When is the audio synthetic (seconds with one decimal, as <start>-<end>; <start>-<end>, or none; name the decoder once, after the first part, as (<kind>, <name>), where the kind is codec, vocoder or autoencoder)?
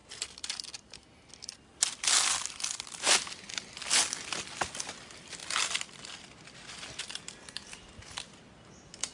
none